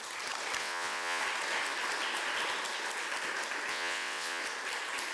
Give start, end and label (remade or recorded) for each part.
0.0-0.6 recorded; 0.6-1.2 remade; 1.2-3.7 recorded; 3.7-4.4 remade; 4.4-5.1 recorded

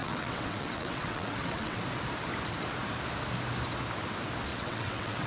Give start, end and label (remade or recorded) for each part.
0.0-1.8 remade; 1.8-4.5 recorded; 4.5-5.3 remade

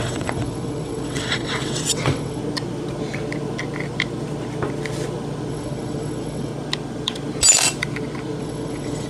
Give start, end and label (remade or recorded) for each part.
0.0-2.4 remade; 2.4-5.5 recorded; 5.5-6.5 remade; 6.5-8.4 recorded; 8.4-9.1 remade

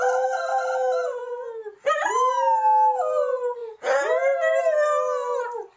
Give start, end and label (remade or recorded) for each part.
0.0-5.8 recorded